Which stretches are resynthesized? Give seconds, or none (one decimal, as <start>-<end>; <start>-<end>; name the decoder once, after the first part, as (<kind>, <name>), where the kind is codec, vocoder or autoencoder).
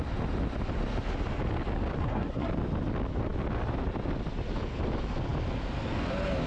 2.0-2.5 (codec, SNAC)